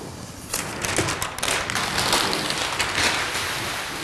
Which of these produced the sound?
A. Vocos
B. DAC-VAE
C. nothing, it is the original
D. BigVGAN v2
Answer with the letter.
C